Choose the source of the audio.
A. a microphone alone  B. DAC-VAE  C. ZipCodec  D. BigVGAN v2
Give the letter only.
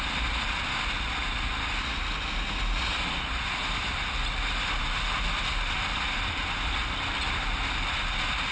A